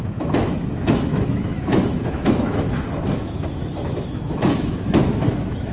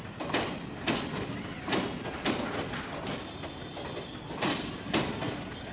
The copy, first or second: first